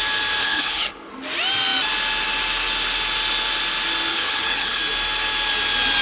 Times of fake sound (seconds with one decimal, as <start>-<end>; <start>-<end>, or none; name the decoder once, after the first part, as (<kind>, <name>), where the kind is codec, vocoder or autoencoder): 0.4-1.1 (codec, HILCodec); 4.1-4.8